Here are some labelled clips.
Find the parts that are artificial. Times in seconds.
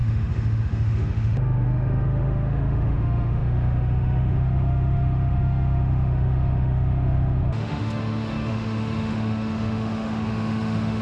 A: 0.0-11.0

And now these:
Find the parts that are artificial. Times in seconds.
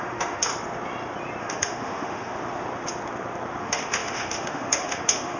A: 0.0-0.5; 1.4-2.3; 3.6-5.4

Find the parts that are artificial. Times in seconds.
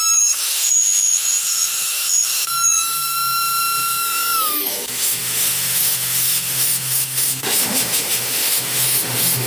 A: 0.0-9.5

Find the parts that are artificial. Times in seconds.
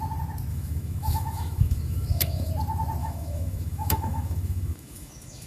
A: 0.5-2.5; 3.0-5.5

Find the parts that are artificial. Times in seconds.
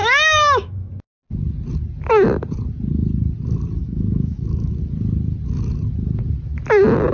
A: 0.0-0.9; 3.8-4.8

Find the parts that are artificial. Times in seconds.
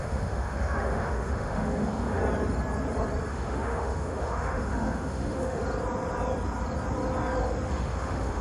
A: 0.0-2.2; 3.3-5.6; 7.7-8.4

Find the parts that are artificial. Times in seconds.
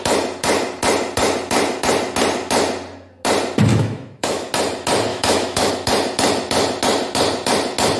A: 3.7-4.5; 5.1-5.7